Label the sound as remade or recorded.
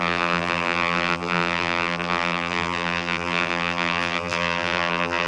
remade